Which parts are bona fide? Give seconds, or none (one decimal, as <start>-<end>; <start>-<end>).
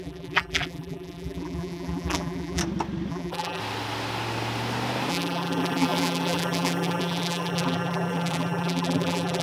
2.6-3.1; 3.6-5.1